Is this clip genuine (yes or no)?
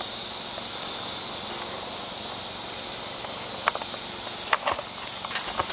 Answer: yes